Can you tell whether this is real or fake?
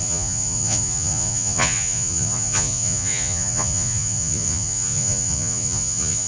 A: fake